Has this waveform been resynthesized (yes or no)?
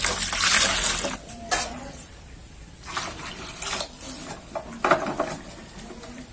no